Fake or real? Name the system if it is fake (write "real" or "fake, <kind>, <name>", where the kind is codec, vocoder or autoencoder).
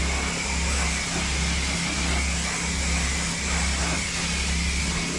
real